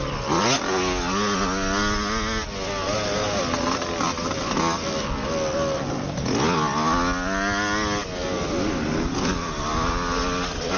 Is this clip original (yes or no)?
yes